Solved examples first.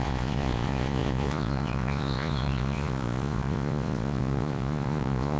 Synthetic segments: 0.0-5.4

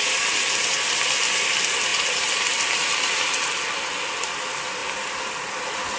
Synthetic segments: 1.9-2.5

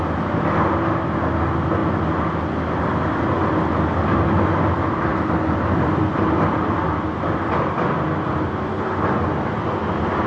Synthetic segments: 5.1-9.5